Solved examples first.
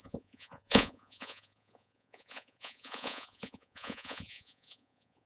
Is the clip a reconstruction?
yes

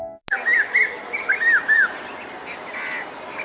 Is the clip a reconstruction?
no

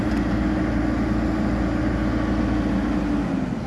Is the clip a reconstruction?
no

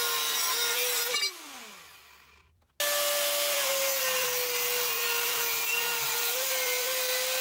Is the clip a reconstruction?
no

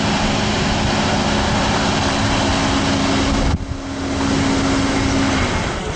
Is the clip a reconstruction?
no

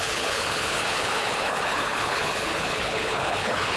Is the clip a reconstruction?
yes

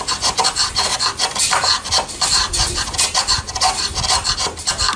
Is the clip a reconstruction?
no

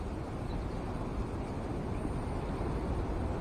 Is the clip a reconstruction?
no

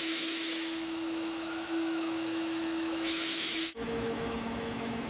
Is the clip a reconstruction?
yes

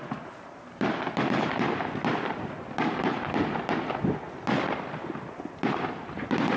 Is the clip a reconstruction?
no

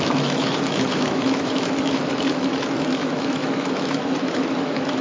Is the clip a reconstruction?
yes